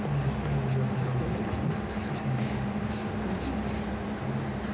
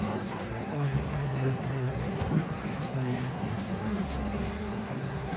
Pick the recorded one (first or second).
first